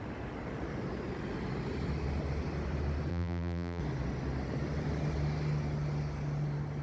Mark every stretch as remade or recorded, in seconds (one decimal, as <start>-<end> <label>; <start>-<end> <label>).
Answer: 0.0-3.1 recorded; 3.1-3.8 remade; 3.8-6.8 recorded